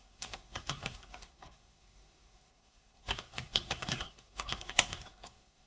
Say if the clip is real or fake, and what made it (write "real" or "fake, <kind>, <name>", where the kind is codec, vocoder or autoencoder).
fake, codec, SNAC